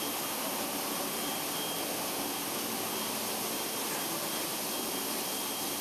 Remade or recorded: remade